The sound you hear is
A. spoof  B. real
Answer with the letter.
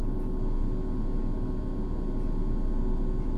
B